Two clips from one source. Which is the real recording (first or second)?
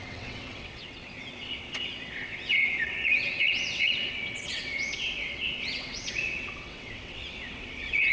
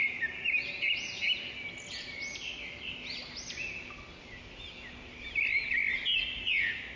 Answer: second